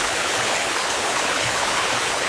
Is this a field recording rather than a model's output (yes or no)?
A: no